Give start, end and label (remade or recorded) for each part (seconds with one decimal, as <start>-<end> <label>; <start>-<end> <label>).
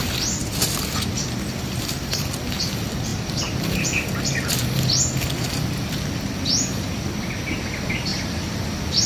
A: 0.0-0.4 recorded; 0.4-2.3 remade; 2.3-8.1 recorded; 8.1-9.1 remade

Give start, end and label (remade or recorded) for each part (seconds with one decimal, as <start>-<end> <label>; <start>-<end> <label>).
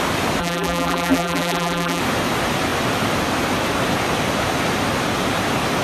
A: 0.0-0.4 recorded; 0.4-2.0 remade; 2.0-5.8 recorded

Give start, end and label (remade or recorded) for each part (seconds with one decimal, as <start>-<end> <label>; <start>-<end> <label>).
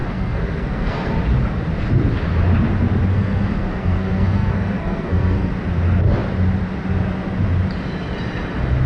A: 0.0-1.1 remade; 1.1-3.1 recorded; 3.1-5.5 remade; 5.5-8.9 recorded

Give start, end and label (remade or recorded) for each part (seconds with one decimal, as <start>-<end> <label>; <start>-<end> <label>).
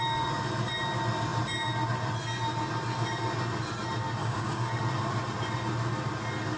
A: 0.0-4.2 recorded; 4.2-4.8 remade; 4.8-6.6 recorded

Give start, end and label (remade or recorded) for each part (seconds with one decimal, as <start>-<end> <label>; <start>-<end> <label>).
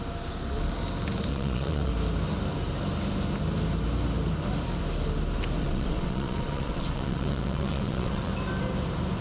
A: 0.0-1.3 recorded; 1.3-1.9 remade; 1.9-5.6 recorded; 5.6-8.3 remade; 8.3-9.2 recorded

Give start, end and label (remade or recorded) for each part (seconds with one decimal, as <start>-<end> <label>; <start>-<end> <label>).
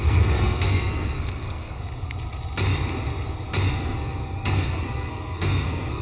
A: 0.0-1.8 remade; 1.8-3.7 recorded; 3.7-6.0 remade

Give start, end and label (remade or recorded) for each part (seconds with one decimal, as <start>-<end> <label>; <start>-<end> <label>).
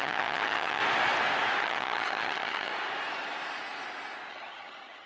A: 0.0-0.8 remade; 0.8-1.6 recorded; 1.6-2.7 remade; 2.7-4.3 recorded; 4.3-5.1 remade